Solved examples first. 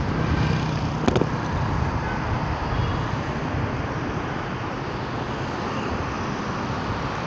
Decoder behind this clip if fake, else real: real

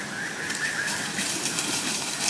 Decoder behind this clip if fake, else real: real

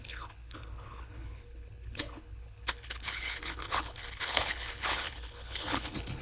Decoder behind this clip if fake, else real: fake, codec, HILCodec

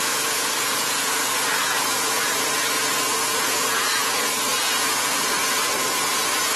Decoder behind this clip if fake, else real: fake, vocoder, Vocos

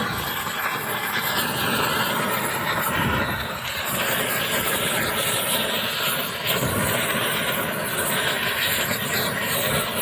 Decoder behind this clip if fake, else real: real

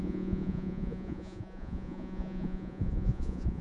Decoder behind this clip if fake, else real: fake, vocoder, Vocos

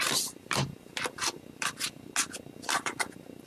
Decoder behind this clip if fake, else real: real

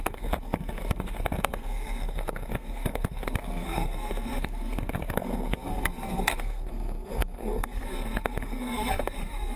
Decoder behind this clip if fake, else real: fake, codec, SNAC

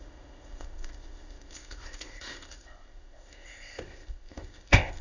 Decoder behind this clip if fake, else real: fake, codec, ZipCodec